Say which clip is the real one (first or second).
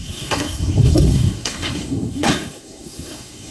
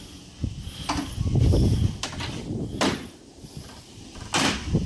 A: second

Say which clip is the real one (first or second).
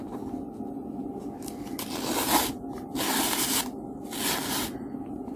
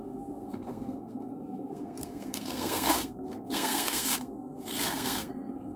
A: first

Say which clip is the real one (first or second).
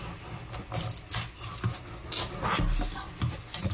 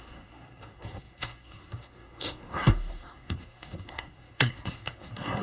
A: first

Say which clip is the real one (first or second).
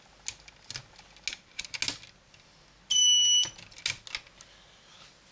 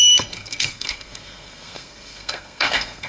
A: first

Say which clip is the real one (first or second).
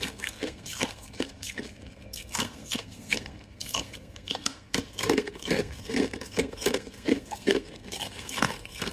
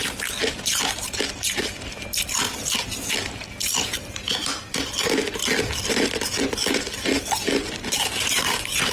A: second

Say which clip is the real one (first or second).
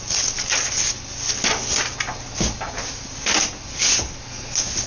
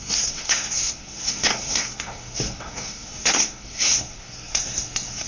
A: first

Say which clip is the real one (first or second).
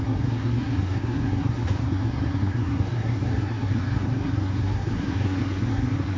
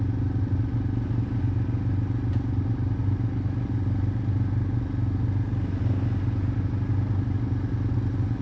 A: second